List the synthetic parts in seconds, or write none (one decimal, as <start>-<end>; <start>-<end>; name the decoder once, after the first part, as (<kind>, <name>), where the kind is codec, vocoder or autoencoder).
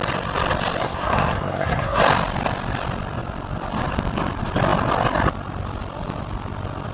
0.8-2.0 (codec, SNAC)